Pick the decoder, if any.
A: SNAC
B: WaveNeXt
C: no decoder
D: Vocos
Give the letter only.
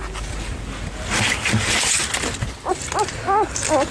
C